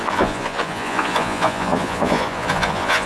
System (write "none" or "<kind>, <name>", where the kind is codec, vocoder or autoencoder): vocoder, Vocos